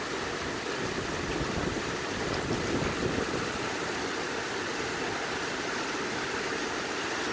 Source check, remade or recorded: recorded